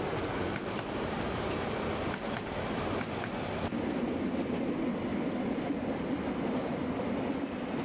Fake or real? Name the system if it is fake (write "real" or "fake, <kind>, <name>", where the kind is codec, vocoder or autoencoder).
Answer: real